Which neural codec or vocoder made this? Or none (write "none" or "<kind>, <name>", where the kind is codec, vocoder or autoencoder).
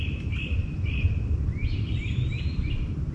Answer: vocoder, BigVGAN v2